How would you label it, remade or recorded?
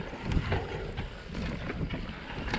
recorded